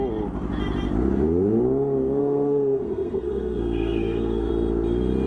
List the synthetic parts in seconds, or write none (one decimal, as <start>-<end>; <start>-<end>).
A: 2.2-4.5